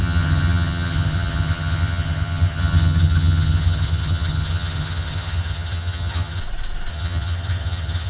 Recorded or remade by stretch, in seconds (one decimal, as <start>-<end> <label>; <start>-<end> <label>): 0.0-6.4 remade; 6.4-6.9 recorded; 6.9-8.1 remade